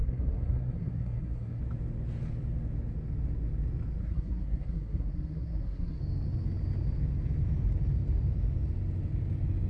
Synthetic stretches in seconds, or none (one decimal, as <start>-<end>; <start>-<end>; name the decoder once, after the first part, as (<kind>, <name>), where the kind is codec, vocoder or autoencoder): 0.0-1.6 (codec, SNAC); 4.0-6.0